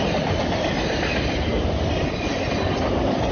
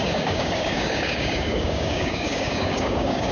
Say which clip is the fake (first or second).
second